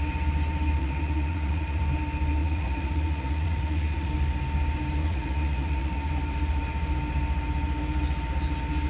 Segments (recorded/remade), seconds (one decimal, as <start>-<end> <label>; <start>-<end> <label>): 0.0-0.8 recorded; 0.8-1.8 remade; 1.8-2.4 recorded; 2.4-4.1 remade; 4.1-5.0 recorded; 5.0-6.1 remade; 6.1-8.9 recorded